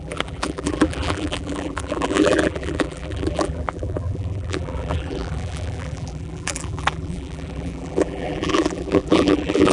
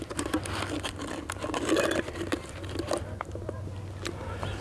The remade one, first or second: first